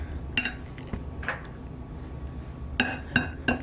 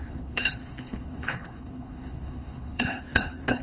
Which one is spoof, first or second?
second